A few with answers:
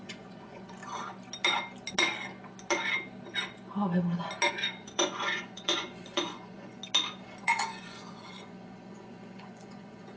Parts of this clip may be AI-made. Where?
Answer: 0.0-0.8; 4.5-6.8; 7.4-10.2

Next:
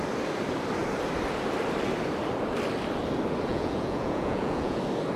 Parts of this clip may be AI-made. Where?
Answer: 3.5-4.8

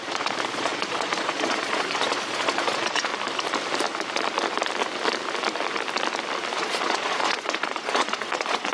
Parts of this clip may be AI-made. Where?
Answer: 0.0-3.1; 6.6-8.7

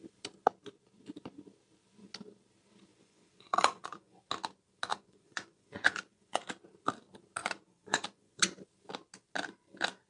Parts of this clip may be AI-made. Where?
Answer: 2.9-4.2; 4.9-6.5; 7.4-8.4

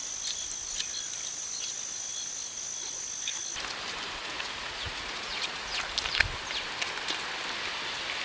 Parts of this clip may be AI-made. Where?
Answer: 4.2-5.8